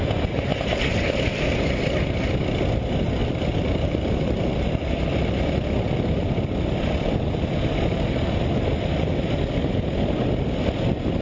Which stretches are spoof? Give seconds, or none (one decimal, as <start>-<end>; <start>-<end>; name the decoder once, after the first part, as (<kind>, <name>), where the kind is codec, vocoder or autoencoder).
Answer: 3.2-8.4 (vocoder, BigVGAN v2)